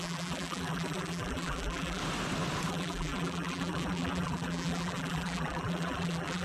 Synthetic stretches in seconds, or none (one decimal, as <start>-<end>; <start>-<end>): 0.0-2.0; 2.7-6.4